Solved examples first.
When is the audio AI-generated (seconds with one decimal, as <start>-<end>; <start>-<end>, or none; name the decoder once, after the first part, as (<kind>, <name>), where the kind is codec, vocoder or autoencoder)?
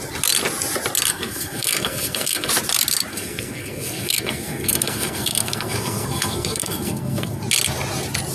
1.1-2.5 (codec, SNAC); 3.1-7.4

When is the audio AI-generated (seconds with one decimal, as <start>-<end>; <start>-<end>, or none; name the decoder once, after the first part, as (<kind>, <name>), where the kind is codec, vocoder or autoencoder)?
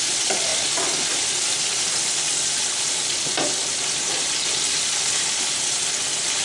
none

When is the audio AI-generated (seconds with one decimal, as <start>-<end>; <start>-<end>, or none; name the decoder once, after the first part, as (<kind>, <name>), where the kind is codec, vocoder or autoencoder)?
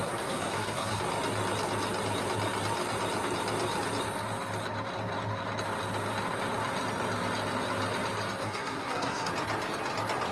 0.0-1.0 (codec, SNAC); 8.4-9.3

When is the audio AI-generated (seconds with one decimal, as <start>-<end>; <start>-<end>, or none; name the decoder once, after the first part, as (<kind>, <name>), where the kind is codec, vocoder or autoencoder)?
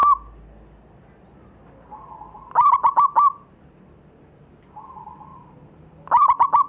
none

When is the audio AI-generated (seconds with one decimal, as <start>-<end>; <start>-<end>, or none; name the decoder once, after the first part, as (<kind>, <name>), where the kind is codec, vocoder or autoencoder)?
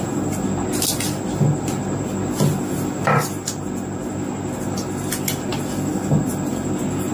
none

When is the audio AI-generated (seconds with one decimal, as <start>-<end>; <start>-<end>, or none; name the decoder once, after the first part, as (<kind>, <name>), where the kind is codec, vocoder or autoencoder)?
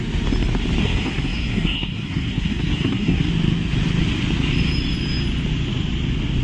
0.8-3.3 (codec, SNAC)